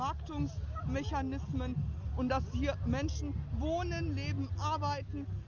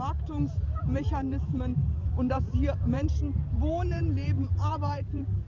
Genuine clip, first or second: first